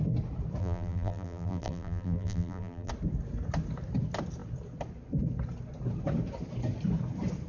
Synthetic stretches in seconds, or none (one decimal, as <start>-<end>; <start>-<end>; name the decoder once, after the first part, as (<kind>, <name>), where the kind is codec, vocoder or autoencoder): 0.6-2.9 (vocoder, BigVGAN v2)